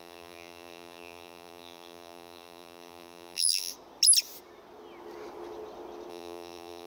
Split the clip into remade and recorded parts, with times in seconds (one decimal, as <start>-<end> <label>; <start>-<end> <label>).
0.0-3.7 remade; 3.7-6.1 recorded; 6.1-6.9 remade